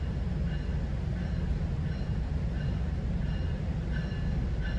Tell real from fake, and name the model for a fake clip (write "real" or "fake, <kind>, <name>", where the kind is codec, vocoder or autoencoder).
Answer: real